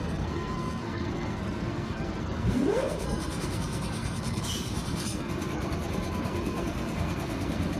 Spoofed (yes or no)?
yes